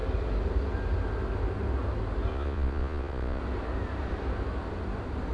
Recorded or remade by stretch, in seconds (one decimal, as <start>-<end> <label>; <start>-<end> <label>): 0.0-2.3 recorded; 2.3-3.4 remade; 3.4-5.3 recorded